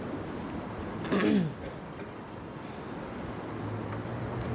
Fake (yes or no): no